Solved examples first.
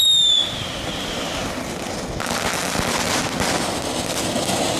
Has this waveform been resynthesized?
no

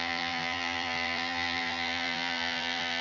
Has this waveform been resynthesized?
yes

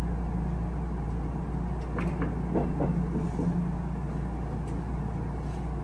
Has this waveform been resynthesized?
no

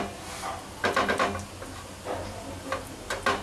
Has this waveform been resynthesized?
no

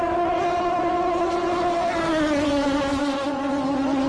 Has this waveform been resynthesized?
no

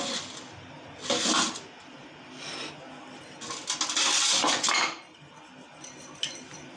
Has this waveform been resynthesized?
no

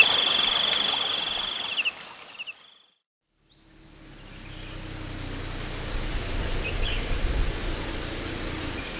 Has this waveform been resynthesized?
no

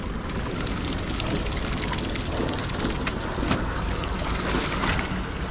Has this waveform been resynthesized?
no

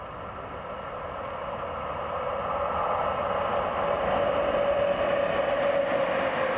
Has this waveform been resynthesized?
no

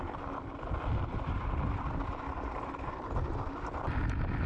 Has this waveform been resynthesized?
yes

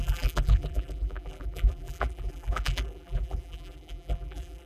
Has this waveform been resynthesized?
yes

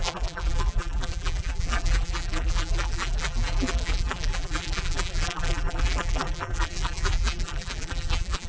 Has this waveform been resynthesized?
yes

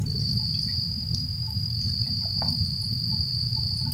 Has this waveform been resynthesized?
yes